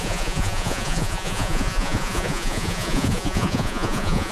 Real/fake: fake